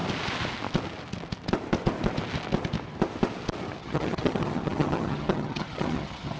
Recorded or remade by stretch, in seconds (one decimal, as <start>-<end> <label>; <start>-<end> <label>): 0.0-3.8 recorded; 3.8-6.4 remade